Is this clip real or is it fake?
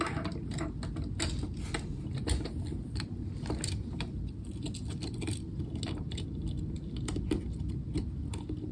real